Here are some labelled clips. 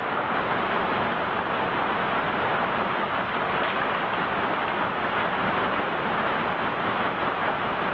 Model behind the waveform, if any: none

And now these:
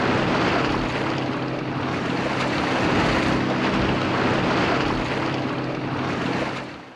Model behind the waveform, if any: none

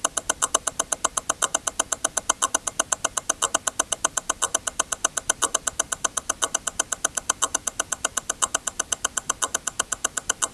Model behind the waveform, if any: none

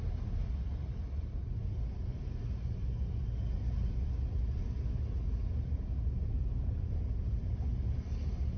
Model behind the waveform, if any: none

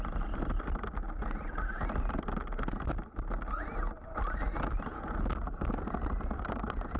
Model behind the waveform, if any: none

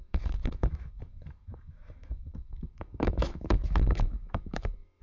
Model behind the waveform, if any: autoencoder, DAC-VAE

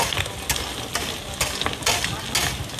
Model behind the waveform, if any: none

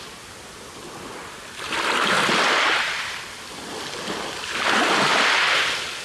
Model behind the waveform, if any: none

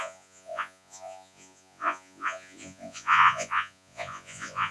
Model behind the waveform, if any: vocoder, Vocos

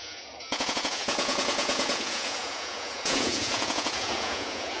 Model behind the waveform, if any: vocoder, Vocos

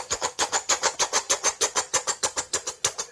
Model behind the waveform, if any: vocoder, Vocos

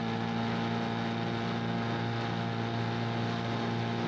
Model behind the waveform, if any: none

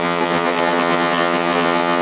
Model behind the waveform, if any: vocoder, HiFi-GAN